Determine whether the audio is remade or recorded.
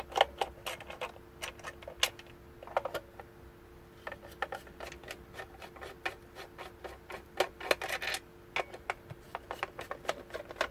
recorded